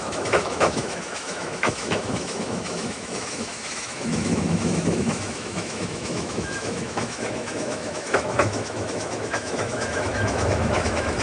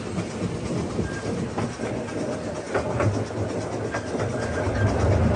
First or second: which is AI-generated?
first